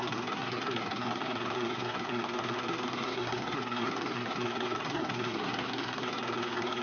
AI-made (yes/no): yes